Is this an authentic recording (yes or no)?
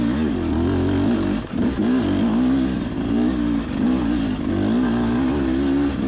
yes